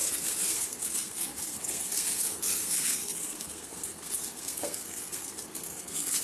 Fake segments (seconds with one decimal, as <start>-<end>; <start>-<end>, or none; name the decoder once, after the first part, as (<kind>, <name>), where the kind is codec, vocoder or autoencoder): 0.0-6.2 (codec, SNAC)